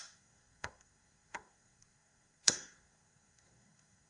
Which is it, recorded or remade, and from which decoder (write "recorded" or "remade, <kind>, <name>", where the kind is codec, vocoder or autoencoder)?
remade, codec, SNAC